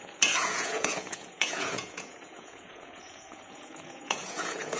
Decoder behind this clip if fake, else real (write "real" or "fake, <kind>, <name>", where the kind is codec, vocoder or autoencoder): fake, vocoder, Vocos